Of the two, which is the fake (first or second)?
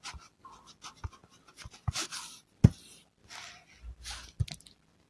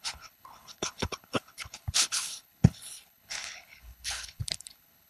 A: second